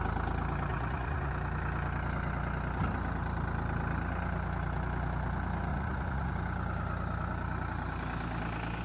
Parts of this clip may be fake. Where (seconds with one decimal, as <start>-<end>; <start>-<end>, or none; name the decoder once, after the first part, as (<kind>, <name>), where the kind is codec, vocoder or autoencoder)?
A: 0.7-1.3 (vocoder, Vocos); 5.7-6.3